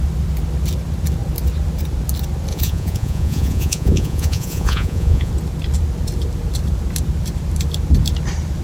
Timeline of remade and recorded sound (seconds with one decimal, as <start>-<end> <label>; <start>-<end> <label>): 0.0-2.5 recorded; 2.5-5.3 remade; 5.3-8.6 recorded